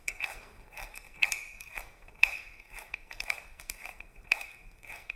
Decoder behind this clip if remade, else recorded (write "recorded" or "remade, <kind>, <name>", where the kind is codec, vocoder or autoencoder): remade, codec, SNAC